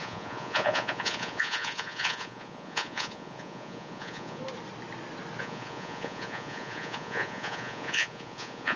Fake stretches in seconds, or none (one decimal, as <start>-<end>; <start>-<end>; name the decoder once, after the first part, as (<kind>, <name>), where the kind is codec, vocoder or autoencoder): 0.0-4.4 (vocoder, Vocos); 5.4-8.8

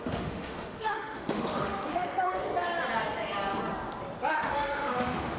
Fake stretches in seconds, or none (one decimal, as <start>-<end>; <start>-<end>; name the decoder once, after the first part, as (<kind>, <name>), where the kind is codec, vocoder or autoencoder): 0.0-2.5 (autoencoder, DAC-VAE); 4.3-5.4

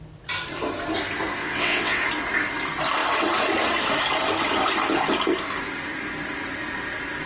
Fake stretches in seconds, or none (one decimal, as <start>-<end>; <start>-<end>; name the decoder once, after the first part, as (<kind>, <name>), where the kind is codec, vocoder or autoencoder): 1.4-2.0 (vocoder, WaveNeXt)

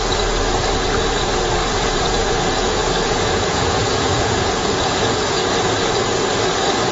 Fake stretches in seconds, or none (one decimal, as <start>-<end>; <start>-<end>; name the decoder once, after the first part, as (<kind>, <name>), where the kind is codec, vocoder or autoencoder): 1.6-5.5 (vocoder, Vocos)

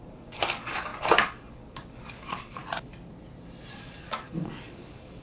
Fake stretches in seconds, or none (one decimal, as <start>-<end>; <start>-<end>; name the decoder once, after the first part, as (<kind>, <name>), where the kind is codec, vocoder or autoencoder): 0.0-2.6 (codec, DAC); 3.7-5.2